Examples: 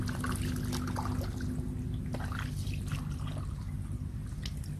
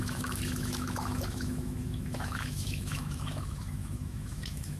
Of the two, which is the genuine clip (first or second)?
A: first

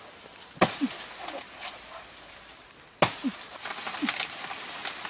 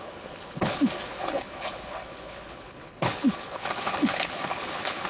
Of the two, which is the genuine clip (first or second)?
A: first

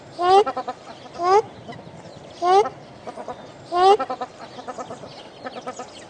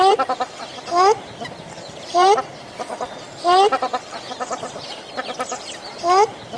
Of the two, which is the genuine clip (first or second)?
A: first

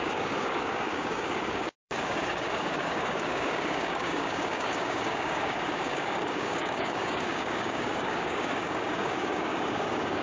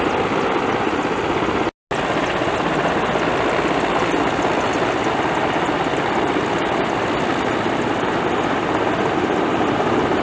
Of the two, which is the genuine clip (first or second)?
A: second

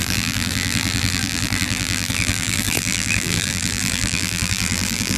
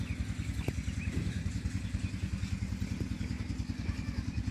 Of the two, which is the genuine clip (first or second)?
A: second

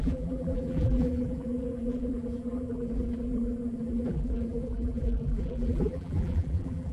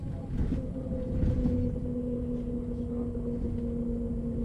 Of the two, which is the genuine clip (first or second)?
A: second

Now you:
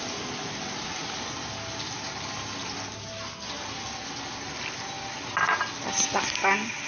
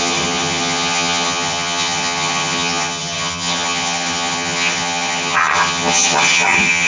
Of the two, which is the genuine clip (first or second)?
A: first